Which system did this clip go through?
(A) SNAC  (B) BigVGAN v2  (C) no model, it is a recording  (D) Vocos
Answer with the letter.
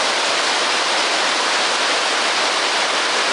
C